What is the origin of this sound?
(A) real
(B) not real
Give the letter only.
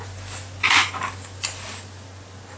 A